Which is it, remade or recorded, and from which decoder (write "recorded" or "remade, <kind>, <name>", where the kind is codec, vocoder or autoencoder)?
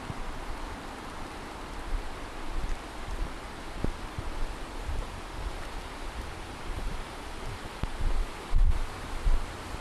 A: remade, vocoder, BigVGAN v2